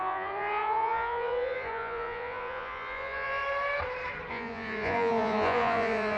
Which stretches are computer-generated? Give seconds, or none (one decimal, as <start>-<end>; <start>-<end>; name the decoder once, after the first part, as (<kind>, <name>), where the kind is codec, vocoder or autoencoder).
0.0-3.4 (vocoder, Vocos); 4.3-6.2